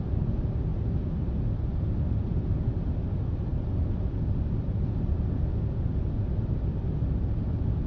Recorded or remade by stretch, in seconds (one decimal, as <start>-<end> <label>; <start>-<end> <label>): 0.0-7.9 recorded